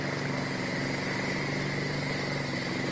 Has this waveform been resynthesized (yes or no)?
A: no